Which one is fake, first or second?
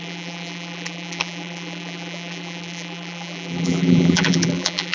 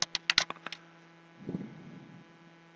first